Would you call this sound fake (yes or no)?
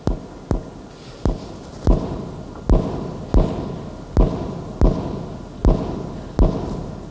no